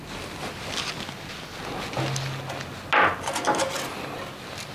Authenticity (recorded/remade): recorded